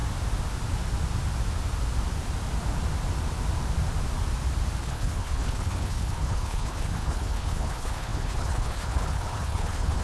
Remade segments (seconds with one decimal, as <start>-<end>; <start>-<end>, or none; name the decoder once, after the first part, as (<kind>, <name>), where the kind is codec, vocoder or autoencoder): 4.8-10.0 (codec, HILCodec)